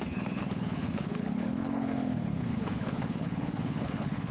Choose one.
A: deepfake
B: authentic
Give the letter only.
A